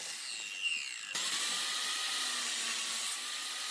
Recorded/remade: recorded